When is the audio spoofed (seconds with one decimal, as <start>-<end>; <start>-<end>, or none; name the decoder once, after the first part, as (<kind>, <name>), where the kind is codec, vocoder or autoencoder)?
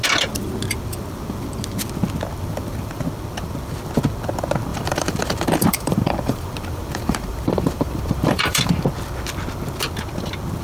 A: 4.7-8.7 (vocoder, BigVGAN v2)